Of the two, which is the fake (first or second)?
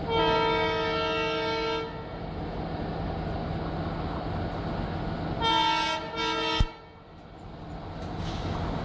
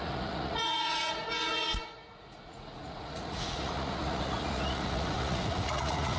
second